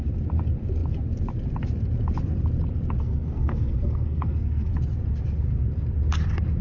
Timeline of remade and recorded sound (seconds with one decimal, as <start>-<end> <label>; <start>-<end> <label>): 0.0-3.0 recorded; 3.0-4.7 remade; 4.7-6.6 recorded